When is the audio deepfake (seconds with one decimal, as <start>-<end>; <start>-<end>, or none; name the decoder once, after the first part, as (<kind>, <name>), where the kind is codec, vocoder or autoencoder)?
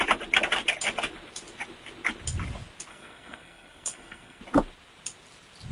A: 2.9-4.4 (codec, SNAC)